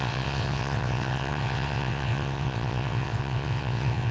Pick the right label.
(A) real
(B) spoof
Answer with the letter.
B